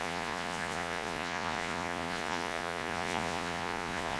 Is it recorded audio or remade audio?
remade